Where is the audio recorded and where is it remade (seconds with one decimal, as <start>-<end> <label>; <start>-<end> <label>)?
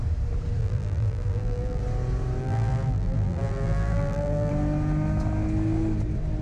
0.0-0.6 recorded; 0.6-1.8 remade; 1.8-2.4 recorded; 2.4-4.5 remade; 4.5-6.4 recorded